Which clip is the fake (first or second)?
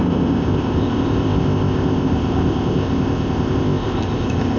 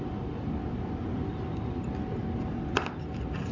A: first